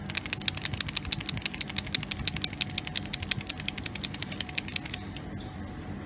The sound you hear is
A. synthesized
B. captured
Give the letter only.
B